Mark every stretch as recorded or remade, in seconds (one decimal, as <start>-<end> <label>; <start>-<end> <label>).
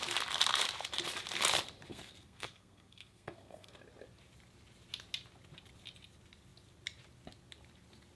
0.0-1.9 recorded; 1.9-3.8 remade; 3.8-8.2 recorded